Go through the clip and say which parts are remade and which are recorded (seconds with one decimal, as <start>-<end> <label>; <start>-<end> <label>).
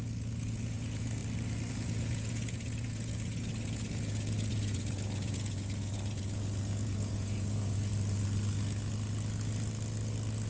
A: 0.0-1.2 remade; 1.2-1.7 recorded; 1.7-7.9 remade; 7.9-10.5 recorded